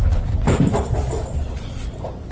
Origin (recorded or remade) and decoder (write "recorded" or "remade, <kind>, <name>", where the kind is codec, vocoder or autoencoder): recorded